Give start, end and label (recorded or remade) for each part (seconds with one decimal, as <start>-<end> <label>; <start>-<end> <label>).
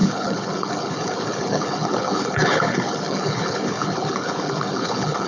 0.0-5.3 remade